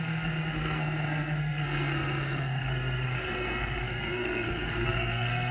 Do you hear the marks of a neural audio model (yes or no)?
yes